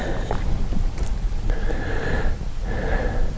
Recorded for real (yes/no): yes